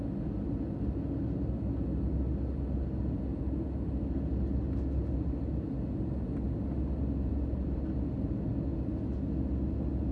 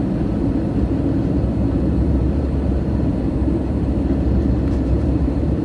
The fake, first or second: second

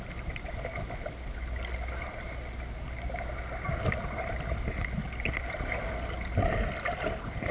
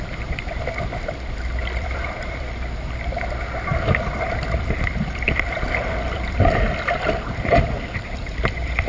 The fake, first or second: second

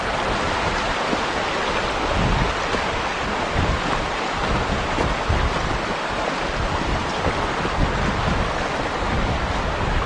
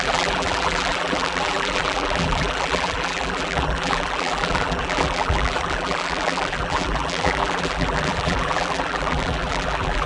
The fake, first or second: second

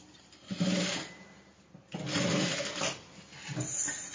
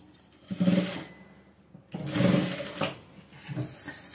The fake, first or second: first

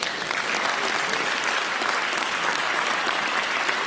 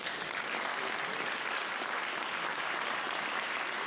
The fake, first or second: first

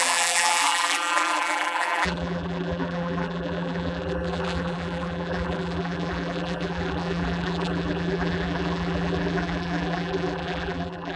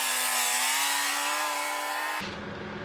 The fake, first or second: first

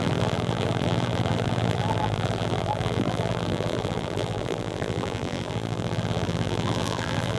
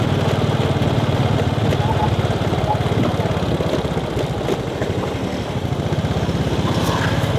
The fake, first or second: first